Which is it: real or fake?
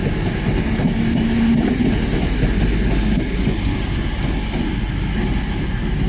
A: real